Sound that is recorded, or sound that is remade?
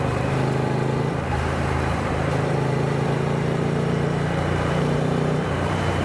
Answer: remade